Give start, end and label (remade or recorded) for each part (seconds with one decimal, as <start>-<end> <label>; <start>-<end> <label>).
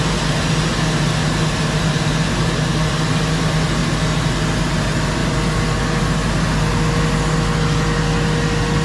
0.0-1.2 recorded; 1.2-2.5 remade; 2.5-3.8 recorded; 3.8-4.3 remade; 4.3-8.8 recorded